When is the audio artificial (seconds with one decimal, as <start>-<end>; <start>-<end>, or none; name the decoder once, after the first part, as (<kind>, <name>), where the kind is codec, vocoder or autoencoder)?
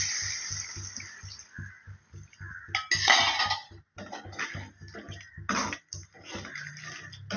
none